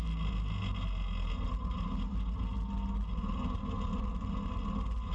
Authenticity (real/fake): real